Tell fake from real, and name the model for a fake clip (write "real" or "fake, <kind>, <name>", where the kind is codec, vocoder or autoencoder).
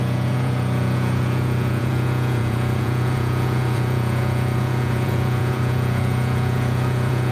fake, vocoder, Vocos